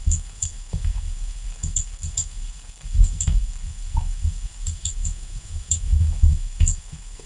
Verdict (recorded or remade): remade